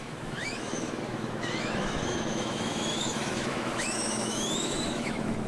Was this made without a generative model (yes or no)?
no